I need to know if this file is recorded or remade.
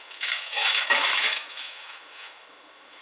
remade